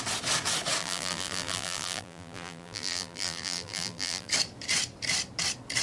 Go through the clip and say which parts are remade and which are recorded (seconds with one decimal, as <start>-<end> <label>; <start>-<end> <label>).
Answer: 0.0-0.8 recorded; 0.8-4.3 remade; 4.3-5.8 recorded